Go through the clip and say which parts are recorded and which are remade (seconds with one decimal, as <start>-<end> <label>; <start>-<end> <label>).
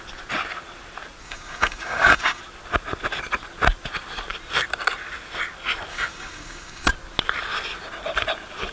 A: 0.0-1.2 recorded; 1.2-2.4 remade; 2.4-5.9 recorded; 5.9-6.9 remade; 6.9-8.7 recorded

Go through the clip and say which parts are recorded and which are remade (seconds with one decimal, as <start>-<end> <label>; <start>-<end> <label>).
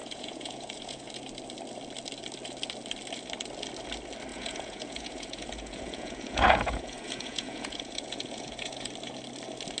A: 0.0-1.1 remade; 1.1-4.3 recorded; 4.3-8.9 remade; 8.9-9.8 recorded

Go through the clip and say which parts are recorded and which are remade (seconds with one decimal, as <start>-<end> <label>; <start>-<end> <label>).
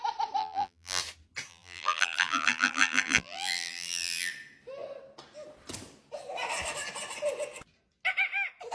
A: 0.0-0.4 recorded; 0.4-1.0 remade; 1.0-1.5 recorded; 1.5-4.3 remade; 4.3-8.7 recorded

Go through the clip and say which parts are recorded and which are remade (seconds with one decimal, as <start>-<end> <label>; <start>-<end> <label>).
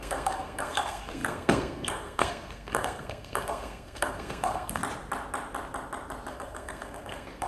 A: 0.0-4.8 remade; 4.8-6.3 recorded; 6.3-7.5 remade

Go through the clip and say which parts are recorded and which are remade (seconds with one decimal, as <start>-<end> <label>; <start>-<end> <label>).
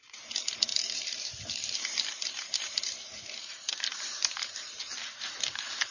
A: 0.0-5.9 remade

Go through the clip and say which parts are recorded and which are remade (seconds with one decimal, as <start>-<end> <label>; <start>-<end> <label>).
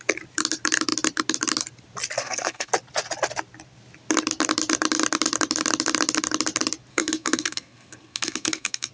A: 0.0-2.2 recorded; 2.2-2.7 remade; 2.7-6.9 recorded; 6.9-8.9 remade